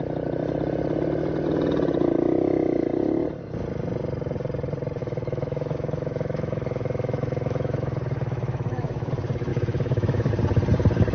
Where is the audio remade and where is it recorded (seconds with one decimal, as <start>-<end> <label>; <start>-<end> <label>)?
0.0-5.0 recorded; 5.0-9.1 remade; 9.1-9.5 recorded; 9.5-10.3 remade; 10.3-11.1 recorded